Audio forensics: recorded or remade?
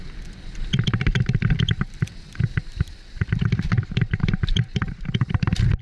remade